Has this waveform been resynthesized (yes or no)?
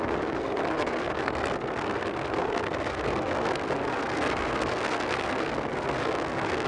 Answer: yes